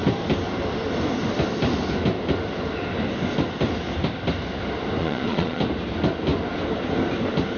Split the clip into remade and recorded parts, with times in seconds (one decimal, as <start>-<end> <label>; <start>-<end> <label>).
0.0-5.0 recorded; 5.0-5.6 remade; 5.6-7.6 recorded